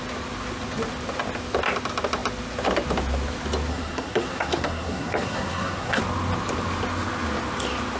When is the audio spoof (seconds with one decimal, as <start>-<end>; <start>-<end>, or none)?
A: 3.7-6.0